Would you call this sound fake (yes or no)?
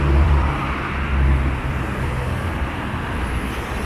yes